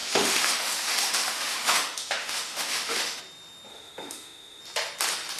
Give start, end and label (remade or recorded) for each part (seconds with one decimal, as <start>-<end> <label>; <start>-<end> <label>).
0.0-3.2 remade; 3.2-3.7 recorded; 3.7-4.6 remade; 4.6-5.4 recorded